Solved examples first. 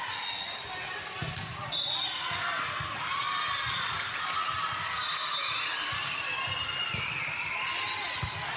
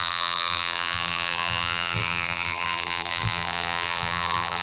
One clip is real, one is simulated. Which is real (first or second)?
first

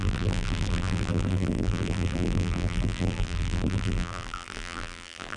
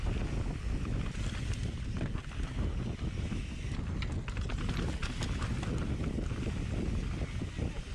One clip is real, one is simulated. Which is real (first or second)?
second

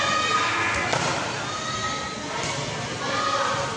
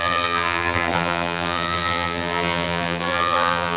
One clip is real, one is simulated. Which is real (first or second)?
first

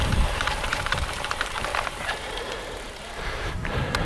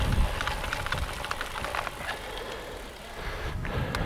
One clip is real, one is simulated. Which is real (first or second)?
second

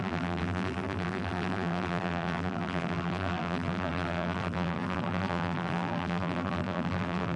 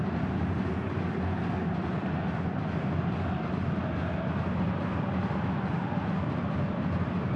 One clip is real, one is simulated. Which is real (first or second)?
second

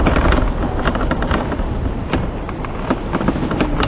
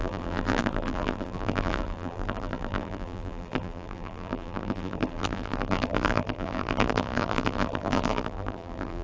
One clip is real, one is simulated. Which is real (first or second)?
first